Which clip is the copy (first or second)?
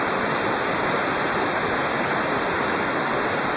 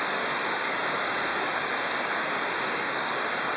second